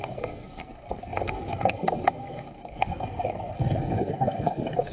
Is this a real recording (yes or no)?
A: no